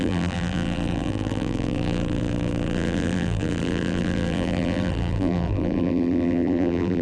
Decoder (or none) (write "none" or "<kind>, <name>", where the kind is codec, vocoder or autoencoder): vocoder, BigVGAN v2